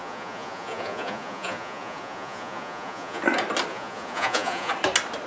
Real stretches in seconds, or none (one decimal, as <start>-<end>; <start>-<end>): 3.2-3.7; 4.7-5.3